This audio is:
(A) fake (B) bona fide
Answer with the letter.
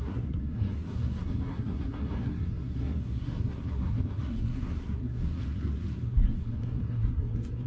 A